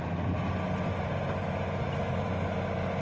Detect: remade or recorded recorded